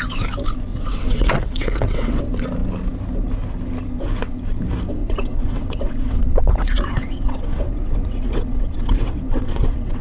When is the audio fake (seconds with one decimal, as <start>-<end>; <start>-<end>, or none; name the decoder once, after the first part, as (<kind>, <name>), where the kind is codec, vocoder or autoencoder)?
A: 0.7-2.2 (vocoder, WaveNeXt); 5.0-10.0